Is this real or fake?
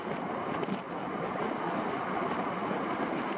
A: real